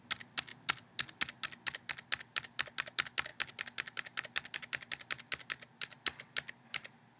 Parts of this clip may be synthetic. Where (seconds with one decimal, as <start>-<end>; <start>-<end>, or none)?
none